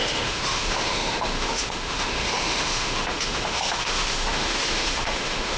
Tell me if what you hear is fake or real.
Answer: fake